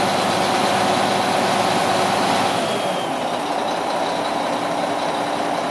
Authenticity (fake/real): real